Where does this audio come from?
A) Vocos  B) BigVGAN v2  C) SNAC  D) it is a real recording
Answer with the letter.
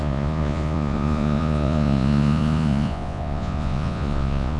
A